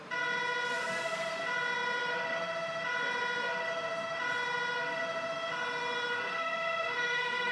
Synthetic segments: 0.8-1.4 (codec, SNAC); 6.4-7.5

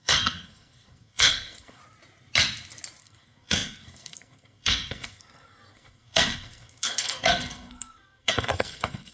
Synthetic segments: 0.0-1.8 (codec, SNAC); 3.0-9.1

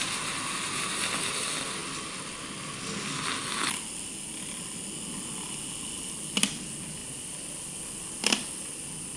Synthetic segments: none